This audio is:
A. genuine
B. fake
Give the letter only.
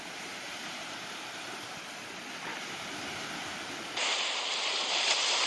B